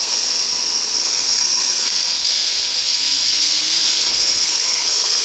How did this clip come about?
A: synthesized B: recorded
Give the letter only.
A